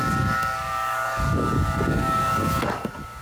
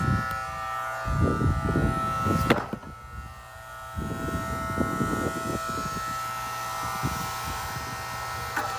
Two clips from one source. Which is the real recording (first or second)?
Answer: second